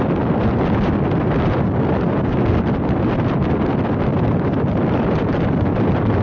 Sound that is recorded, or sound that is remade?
recorded